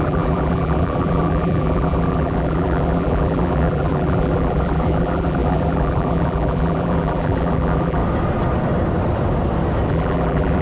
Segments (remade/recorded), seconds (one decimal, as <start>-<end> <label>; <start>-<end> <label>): 0.0-8.0 remade; 8.0-9.9 recorded; 9.9-10.6 remade

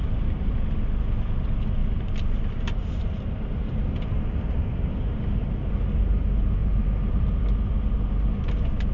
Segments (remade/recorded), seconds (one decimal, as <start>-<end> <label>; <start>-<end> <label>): 0.0-1.8 recorded; 1.8-5.7 remade; 5.7-6.6 recorded; 6.6-7.4 remade; 7.4-8.9 recorded

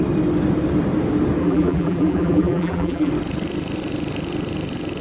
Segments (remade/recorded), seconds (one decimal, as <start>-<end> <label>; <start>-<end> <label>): 0.0-1.4 recorded; 1.4-3.1 remade; 3.1-5.0 recorded

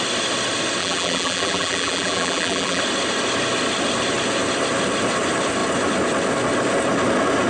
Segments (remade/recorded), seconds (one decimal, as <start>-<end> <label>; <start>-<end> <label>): 0.0-0.8 recorded; 0.8-2.8 remade; 2.8-7.5 recorded

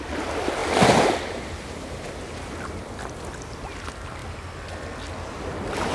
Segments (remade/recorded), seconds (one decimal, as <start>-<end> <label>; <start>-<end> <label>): 0.0-0.6 recorded; 0.6-1.7 remade; 1.7-4.2 recorded; 4.2-4.7 remade; 4.7-5.9 recorded

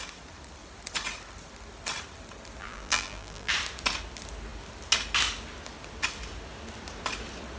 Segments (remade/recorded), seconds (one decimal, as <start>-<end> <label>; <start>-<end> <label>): 0.0-2.6 recorded; 2.6-3.5 remade; 3.5-7.6 recorded